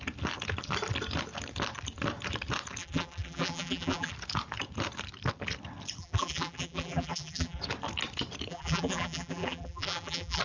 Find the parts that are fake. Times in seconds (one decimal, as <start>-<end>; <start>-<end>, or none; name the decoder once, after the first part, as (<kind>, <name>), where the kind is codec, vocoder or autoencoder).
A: 2.8-4.1 (vocoder, BigVGAN v2); 6.0-7.6; 8.5-10.4